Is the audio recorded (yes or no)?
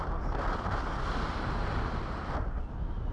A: yes